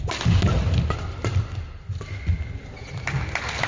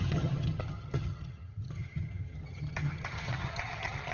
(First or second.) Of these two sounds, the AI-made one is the second